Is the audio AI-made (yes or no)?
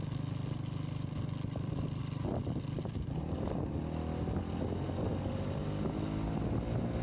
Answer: no